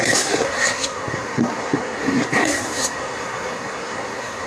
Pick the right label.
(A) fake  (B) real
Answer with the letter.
A